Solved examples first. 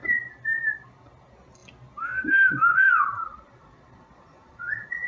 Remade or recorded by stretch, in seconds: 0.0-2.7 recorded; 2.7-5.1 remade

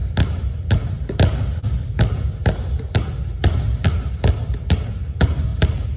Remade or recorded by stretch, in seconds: 0.0-6.0 recorded

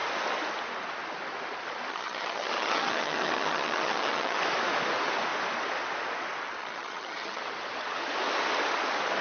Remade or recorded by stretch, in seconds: 0.0-1.9 recorded; 1.9-4.4 remade; 4.4-6.6 recorded; 6.6-7.4 remade; 7.4-9.2 recorded

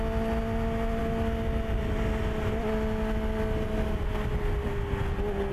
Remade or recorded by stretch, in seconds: 0.0-5.5 recorded

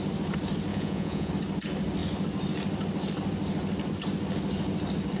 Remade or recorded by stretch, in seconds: 0.0-0.7 recorded; 0.7-1.3 remade; 1.3-5.2 recorded

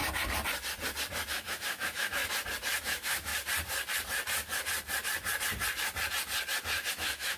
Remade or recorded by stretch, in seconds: 0.0-1.3 recorded; 1.3-2.2 remade; 2.2-2.8 recorded; 2.8-3.3 remade; 3.3-6.9 recorded; 6.9-7.4 remade

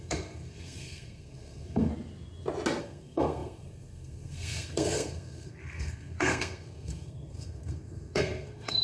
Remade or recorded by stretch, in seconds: 0.0-1.9 remade; 1.9-2.8 recorded; 2.8-8.8 remade

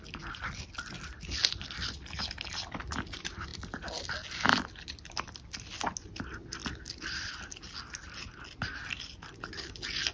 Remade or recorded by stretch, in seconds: 0.0-10.1 recorded